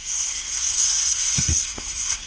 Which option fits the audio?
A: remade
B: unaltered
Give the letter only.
A